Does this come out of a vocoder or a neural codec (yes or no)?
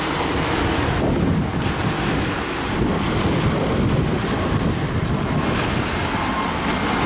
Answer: no